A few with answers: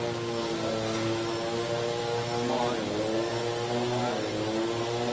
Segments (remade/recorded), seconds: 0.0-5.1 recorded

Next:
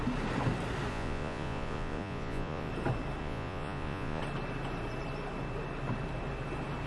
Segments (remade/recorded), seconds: 0.0-0.9 recorded; 0.9-2.7 remade; 2.7-3.2 recorded; 3.2-4.2 remade; 4.2-6.9 recorded

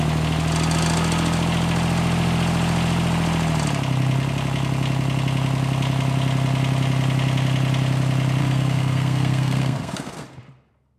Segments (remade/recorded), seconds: 0.0-8.4 recorded; 8.4-10.4 remade; 10.4-11.0 recorded

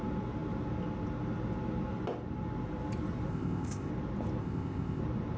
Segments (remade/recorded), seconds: 0.0-3.3 recorded; 3.3-3.9 remade; 3.9-4.4 recorded; 4.4-5.0 remade; 5.0-5.4 recorded

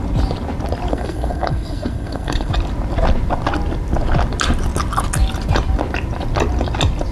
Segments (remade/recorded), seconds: 0.0-0.9 recorded; 0.9-2.5 remade; 2.5-7.1 recorded